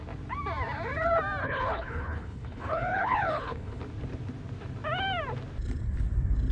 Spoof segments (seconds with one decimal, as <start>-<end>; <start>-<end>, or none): 1.4-3.8